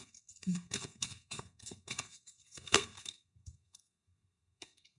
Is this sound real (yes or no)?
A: no